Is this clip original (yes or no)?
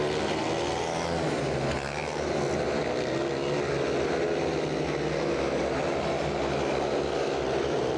yes